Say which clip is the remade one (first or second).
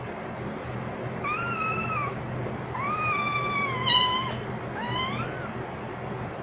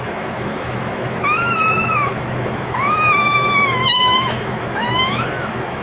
second